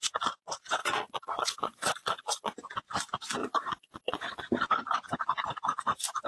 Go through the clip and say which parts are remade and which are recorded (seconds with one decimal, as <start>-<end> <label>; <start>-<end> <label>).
0.0-0.8 recorded; 0.8-2.5 remade; 2.5-3.4 recorded; 3.4-4.4 remade; 4.4-6.3 recorded